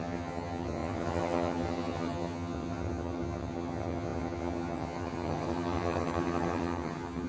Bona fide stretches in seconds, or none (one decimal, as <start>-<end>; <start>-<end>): none